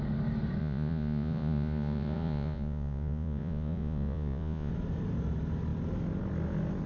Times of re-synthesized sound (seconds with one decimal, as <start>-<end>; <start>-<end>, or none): 0.6-4.7